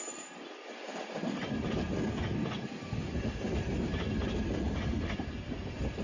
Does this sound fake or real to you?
real